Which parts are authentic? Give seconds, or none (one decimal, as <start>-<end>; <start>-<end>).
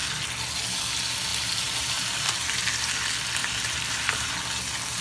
0.0-1.3; 2.7-3.4; 4.3-5.0